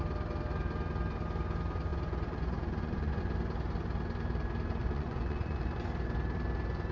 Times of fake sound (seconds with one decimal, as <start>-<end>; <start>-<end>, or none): 1.9-3.2; 4.8-5.8